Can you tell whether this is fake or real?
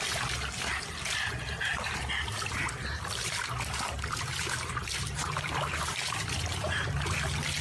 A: real